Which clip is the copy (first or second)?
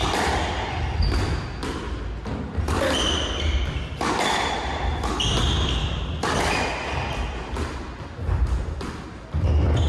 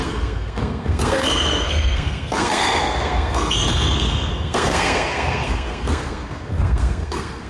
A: second